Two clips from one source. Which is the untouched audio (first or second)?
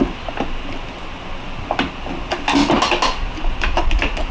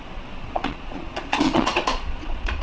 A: first